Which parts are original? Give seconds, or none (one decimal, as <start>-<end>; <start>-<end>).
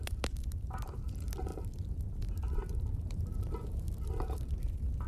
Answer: none